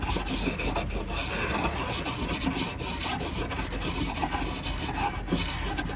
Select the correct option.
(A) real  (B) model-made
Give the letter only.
A